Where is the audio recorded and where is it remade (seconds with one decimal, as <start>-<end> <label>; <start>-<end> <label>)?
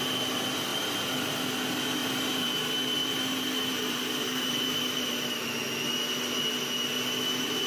0.0-0.7 recorded; 0.7-1.3 remade; 1.3-2.0 recorded; 2.0-2.5 remade; 2.5-3.0 recorded; 3.0-5.4 remade; 5.4-7.7 recorded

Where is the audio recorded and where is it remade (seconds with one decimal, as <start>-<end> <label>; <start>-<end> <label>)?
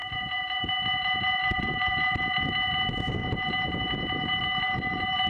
0.0-0.7 remade; 0.7-1.4 recorded; 1.4-2.0 remade; 2.0-5.3 recorded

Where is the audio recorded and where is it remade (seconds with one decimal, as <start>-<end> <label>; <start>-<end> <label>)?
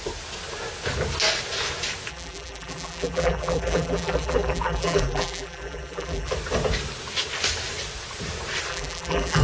0.0-2.1 recorded; 2.1-6.3 remade; 6.3-8.7 recorded; 8.7-9.4 remade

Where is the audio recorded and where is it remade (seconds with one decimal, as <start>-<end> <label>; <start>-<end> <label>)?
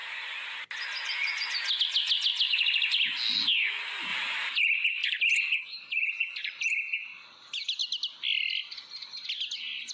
0.0-1.8 remade; 1.8-4.1 recorded; 4.1-4.6 remade; 4.6-9.9 recorded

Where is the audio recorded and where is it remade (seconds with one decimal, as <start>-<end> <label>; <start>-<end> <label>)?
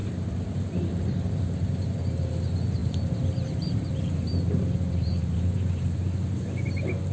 0.0-2.3 remade; 2.3-2.8 recorded; 2.8-6.0 remade; 6.0-7.1 recorded